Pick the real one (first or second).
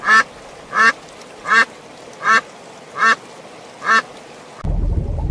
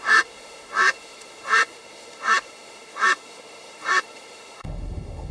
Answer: first